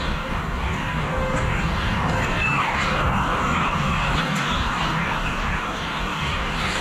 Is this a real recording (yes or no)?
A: no